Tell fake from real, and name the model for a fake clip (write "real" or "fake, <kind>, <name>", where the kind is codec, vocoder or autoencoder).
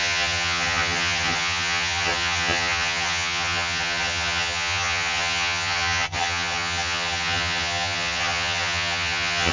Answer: fake, vocoder, HiFi-GAN